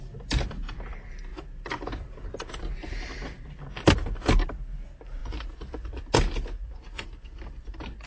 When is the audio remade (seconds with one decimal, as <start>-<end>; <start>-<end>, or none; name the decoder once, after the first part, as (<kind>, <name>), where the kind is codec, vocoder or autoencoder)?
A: none